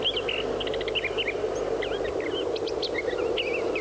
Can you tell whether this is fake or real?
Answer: real